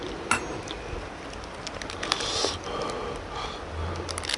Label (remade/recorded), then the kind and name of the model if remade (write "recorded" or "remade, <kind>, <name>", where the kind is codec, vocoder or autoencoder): recorded